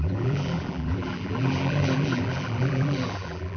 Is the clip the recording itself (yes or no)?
no